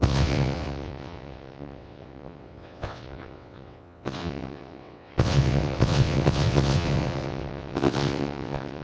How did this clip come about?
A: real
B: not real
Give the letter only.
B